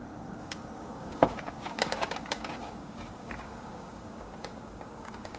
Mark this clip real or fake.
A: fake